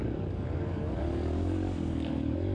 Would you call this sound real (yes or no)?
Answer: no